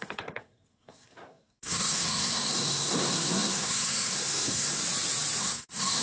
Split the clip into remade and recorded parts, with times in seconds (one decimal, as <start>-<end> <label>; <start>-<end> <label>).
0.0-4.8 remade; 4.8-5.4 recorded; 5.4-6.0 remade